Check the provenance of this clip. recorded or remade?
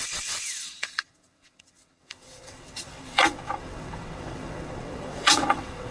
remade